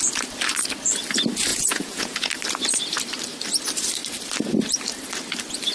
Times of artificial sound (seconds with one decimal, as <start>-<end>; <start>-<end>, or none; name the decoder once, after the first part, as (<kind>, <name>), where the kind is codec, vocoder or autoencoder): 1.5-2.3 (vocoder, Vocos)